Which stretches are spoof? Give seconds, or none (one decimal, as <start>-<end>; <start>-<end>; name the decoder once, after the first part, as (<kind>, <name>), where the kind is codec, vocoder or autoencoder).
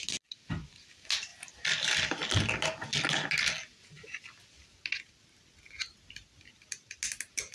none